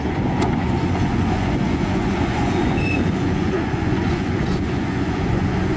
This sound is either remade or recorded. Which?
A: remade